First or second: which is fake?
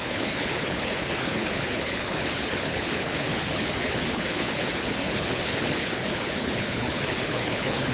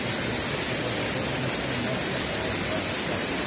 first